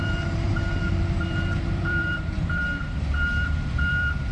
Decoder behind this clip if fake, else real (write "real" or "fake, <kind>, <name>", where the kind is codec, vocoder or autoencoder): fake, vocoder, BigVGAN v2